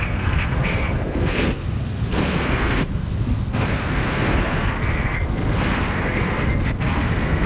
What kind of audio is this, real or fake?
fake